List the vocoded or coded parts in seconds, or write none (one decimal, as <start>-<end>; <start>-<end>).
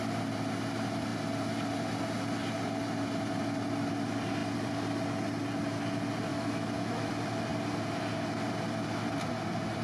6.3-7.1